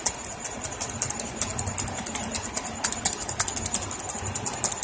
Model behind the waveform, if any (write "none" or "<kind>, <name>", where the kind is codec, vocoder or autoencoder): none